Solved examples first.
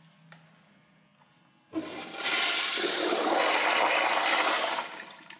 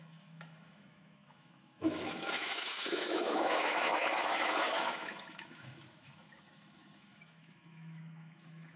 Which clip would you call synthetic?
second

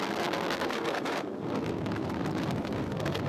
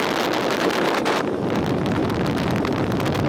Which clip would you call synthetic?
first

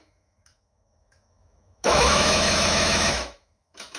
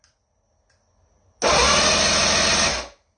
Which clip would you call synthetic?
first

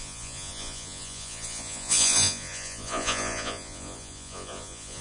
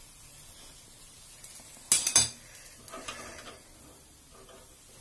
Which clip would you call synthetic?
first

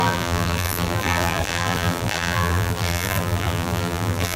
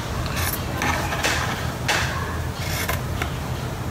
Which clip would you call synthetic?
first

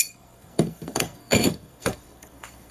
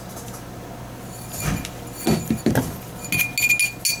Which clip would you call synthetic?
first